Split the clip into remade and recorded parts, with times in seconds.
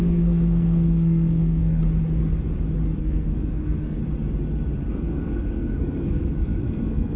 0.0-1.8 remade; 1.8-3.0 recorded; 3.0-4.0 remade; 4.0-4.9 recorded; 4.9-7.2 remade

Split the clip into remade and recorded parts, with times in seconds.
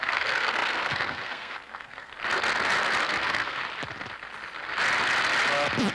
0.0-2.1 remade; 2.1-3.0 recorded; 3.0-3.6 remade; 3.6-5.9 recorded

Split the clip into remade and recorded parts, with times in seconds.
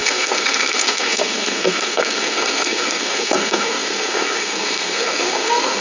0.0-5.8 remade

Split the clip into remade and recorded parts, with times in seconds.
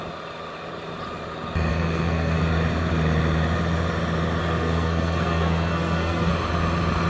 0.0-1.7 recorded; 1.7-2.4 remade; 2.4-4.4 recorded; 4.4-6.3 remade; 6.3-7.1 recorded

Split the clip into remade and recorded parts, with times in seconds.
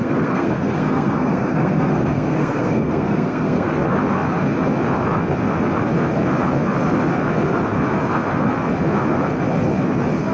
0.0-3.7 remade; 3.7-10.3 recorded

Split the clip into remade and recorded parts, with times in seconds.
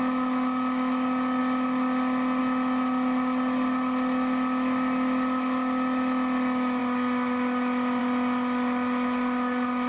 0.0-9.9 recorded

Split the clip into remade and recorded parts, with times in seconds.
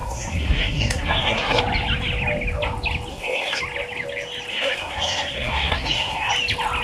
0.0-1.6 remade; 1.6-3.1 recorded; 3.1-3.6 remade; 3.6-4.5 recorded; 4.5-6.3 remade; 6.3-6.8 recorded